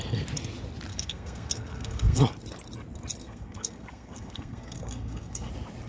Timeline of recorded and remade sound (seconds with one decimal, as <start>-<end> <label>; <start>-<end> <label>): 0.0-0.9 recorded; 0.9-2.2 remade; 2.2-3.2 recorded; 3.2-5.5 remade; 5.5-5.9 recorded